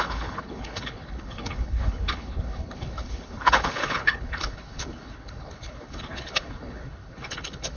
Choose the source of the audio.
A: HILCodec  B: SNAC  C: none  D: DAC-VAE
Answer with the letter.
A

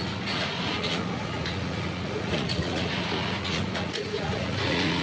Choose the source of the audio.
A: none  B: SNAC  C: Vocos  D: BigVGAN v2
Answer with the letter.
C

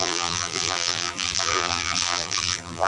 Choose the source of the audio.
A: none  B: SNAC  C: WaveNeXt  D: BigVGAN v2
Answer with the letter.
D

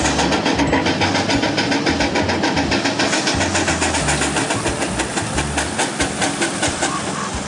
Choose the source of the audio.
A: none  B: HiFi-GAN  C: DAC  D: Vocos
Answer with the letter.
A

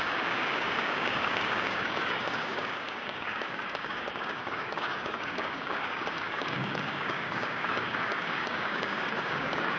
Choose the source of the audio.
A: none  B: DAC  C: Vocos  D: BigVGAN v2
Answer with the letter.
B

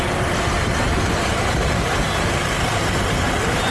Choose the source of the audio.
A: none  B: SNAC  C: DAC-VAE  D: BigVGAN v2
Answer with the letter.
A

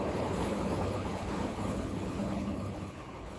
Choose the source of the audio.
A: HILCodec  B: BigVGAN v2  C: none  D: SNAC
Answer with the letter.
A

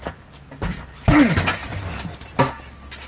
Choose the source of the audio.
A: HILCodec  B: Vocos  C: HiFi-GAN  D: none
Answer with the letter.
D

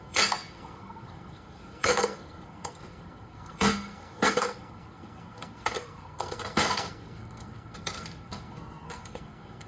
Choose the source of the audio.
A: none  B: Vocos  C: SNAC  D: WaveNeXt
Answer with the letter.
C